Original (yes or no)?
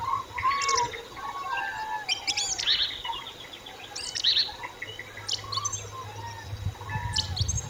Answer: yes